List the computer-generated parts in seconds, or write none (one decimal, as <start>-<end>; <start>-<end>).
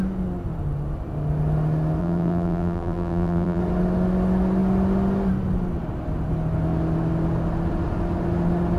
2.0-3.6